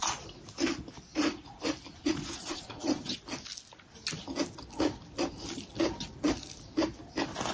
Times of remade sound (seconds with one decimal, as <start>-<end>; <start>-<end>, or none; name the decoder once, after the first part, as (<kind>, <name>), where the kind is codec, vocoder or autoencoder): 1.1-1.6 (vocoder, Vocos); 2.0-3.1